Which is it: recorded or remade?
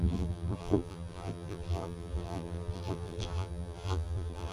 remade